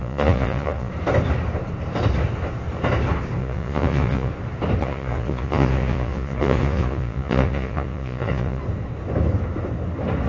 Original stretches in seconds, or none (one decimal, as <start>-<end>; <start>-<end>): 0.9-3.4; 4.3-4.8; 8.6-10.3